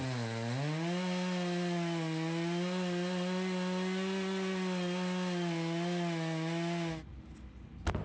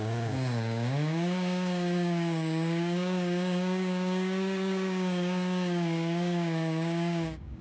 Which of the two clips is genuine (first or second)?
first